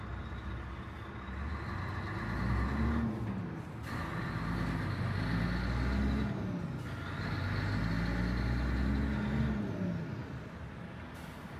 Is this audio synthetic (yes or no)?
no